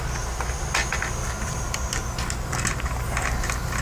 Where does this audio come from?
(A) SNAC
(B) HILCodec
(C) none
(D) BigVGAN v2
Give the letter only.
C